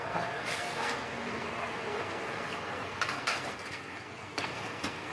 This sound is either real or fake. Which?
fake